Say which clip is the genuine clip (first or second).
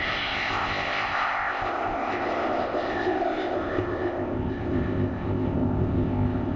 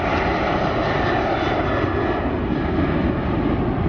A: second